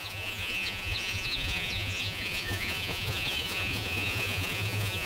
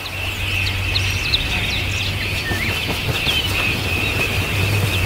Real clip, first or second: second